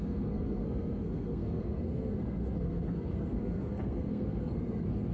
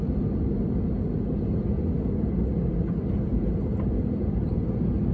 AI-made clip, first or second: first